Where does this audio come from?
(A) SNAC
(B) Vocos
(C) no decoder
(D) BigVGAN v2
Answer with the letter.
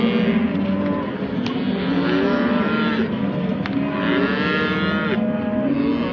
C